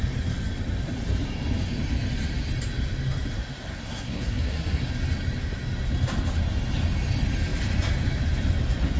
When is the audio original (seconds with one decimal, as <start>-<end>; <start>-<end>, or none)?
0.0-3.7; 4.9-9.0